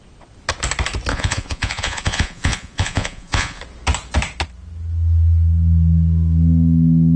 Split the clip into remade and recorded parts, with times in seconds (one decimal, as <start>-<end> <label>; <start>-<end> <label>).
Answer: 0.0-1.1 recorded; 1.1-3.6 remade; 3.6-7.2 recorded

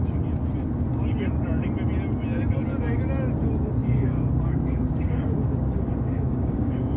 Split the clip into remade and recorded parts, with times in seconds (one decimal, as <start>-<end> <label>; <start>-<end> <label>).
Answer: 0.0-3.8 recorded; 3.8-7.0 remade

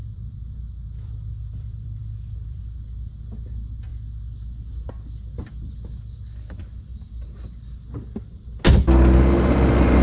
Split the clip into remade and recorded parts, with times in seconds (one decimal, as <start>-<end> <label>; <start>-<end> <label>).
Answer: 0.0-2.6 remade; 2.6-10.0 recorded

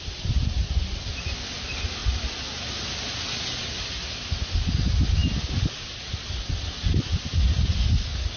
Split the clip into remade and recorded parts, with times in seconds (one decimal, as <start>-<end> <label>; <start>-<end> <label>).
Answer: 0.0-8.4 recorded